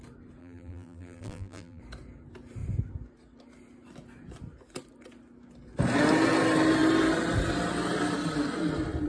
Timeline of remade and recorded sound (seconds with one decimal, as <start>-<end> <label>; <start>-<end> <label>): 0.0-0.4 recorded; 0.4-1.8 remade; 1.8-9.1 recorded